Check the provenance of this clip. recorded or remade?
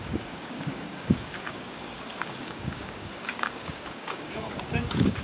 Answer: remade